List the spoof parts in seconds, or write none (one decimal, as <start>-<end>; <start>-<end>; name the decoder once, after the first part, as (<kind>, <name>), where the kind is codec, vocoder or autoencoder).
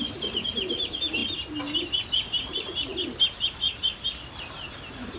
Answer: none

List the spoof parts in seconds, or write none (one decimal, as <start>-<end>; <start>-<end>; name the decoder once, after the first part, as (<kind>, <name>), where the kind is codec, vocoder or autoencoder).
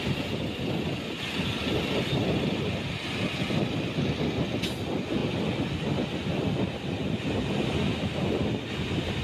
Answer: none